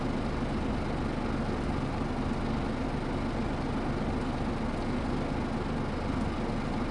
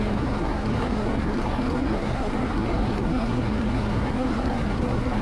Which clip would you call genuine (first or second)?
first